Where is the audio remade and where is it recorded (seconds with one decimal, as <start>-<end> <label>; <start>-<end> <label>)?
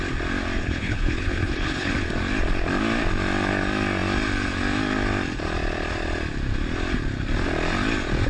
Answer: 0.0-0.6 recorded; 0.6-1.9 remade; 1.9-8.3 recorded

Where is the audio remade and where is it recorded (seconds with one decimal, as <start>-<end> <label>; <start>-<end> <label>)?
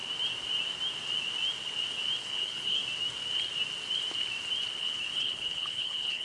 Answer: 0.0-2.2 recorded; 2.2-2.8 remade; 2.8-4.8 recorded; 4.8-6.2 remade